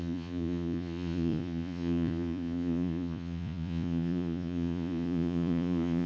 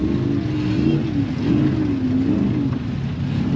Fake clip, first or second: first